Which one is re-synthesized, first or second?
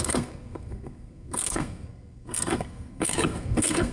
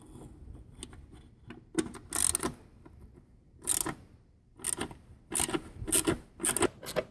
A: first